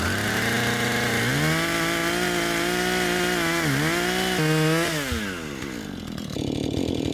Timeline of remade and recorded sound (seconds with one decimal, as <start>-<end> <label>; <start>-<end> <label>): 0.0-7.1 recorded